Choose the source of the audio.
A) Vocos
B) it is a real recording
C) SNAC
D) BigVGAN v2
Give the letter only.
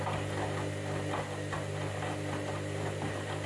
B